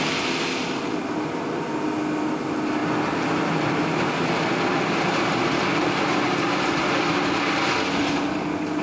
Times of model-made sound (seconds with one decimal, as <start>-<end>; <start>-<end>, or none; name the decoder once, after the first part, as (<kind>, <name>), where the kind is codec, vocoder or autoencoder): none